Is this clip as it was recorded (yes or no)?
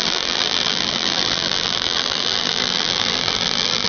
no